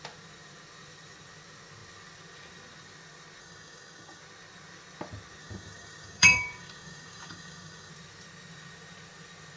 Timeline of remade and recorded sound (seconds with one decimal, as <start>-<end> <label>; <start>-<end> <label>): 0.0-3.4 recorded; 3.4-4.2 remade; 4.2-5.4 recorded; 5.4-7.9 remade; 7.9-9.6 recorded